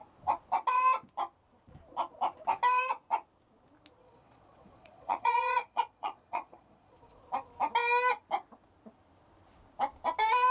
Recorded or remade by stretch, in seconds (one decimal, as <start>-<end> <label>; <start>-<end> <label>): 0.0-4.0 recorded; 4.0-7.2 remade; 7.2-10.5 recorded